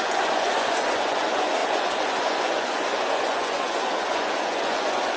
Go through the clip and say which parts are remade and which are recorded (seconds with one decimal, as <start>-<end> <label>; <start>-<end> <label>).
0.0-5.2 remade